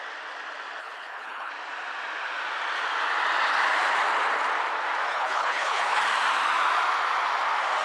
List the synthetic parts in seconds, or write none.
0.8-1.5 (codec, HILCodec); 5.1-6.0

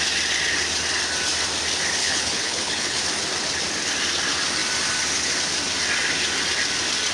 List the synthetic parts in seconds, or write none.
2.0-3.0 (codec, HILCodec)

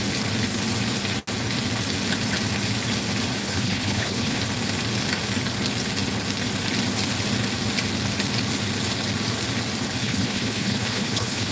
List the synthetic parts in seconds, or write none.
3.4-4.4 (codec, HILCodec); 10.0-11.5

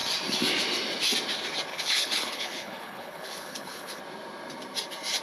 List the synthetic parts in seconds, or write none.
1.7-4.0 (codec, HILCodec)